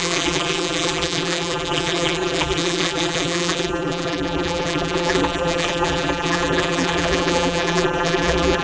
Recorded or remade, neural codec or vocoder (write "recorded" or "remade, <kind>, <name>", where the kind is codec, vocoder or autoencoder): remade, vocoder, BigVGAN v2